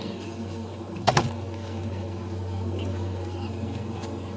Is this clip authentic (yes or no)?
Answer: no